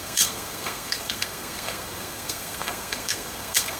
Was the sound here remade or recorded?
remade